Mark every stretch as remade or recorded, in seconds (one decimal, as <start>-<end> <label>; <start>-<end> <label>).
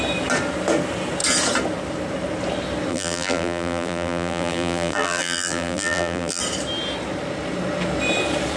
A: 0.0-2.9 recorded; 2.9-6.4 remade; 6.4-8.6 recorded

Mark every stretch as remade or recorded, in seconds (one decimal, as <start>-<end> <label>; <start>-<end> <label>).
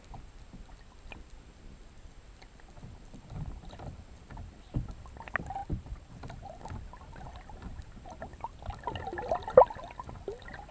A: 0.0-5.6 recorded; 5.6-6.1 remade; 6.1-10.7 recorded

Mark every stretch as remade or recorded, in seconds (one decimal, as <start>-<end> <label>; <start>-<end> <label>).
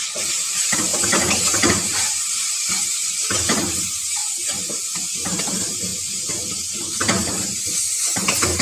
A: 0.0-4.2 remade; 4.2-5.1 recorded; 5.1-5.9 remade; 5.9-7.6 recorded; 7.6-8.6 remade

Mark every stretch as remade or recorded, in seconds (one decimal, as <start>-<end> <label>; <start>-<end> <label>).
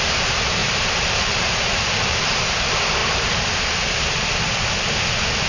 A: 0.0-0.6 recorded; 0.6-2.2 remade; 2.2-3.0 recorded; 3.0-3.5 remade; 3.5-5.5 recorded